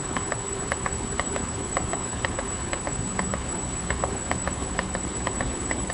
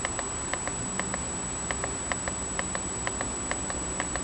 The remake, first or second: first